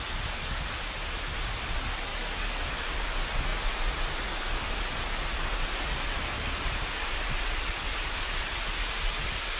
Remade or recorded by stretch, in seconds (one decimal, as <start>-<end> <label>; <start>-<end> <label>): 0.0-2.1 recorded; 2.1-2.8 remade; 2.8-9.6 recorded